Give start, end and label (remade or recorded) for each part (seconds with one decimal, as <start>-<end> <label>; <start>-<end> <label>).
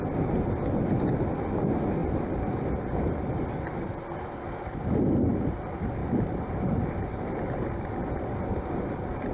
0.0-9.3 recorded